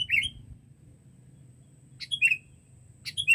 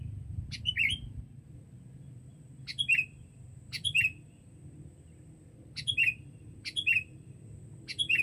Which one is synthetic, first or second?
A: second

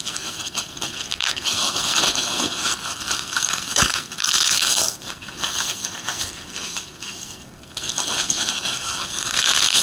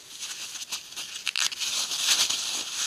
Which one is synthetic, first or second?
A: first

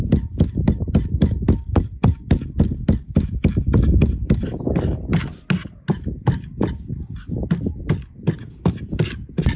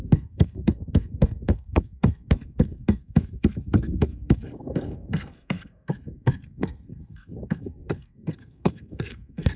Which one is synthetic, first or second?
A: second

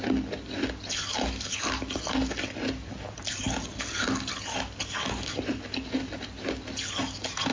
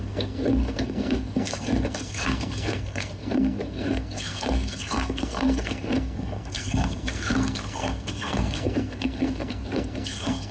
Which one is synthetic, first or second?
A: second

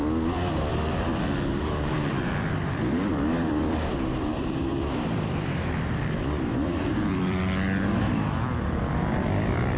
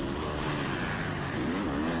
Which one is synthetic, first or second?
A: first